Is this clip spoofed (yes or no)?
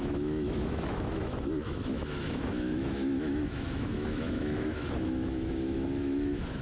yes